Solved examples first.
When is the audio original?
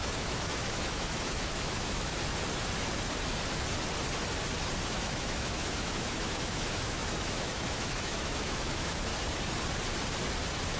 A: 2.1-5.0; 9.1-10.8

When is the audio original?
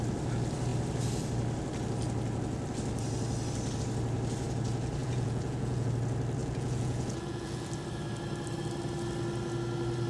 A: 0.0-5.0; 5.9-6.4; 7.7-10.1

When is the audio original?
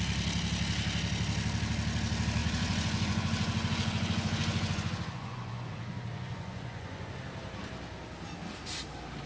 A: 0.0-2.4; 7.1-9.3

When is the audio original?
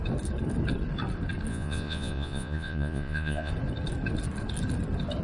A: 0.0-1.5; 3.5-5.2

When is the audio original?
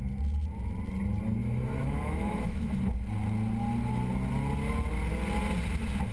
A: 0.0-1.4; 2.8-6.1